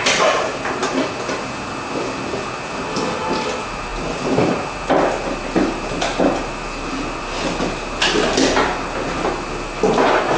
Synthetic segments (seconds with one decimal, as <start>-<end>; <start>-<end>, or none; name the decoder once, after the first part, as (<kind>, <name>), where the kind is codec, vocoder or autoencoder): none